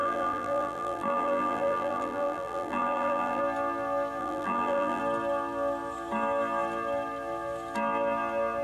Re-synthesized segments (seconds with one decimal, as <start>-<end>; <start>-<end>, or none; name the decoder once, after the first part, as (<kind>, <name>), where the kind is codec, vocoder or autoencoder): 0.0-3.4 (vocoder, BigVGAN v2); 4.2-5.0